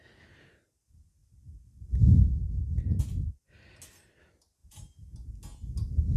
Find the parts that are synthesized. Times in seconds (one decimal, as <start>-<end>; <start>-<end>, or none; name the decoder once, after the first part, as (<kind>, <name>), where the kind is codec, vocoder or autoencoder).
none